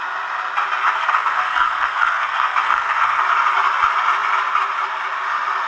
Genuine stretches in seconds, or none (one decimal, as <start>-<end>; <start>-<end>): 0.0-1.0; 3.2-5.7